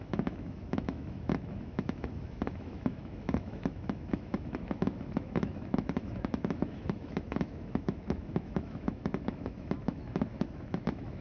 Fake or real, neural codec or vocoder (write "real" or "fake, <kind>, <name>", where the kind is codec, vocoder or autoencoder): fake, autoencoder, DAC-VAE